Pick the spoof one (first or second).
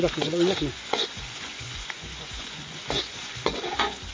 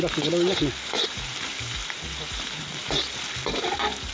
first